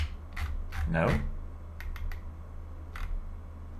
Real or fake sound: real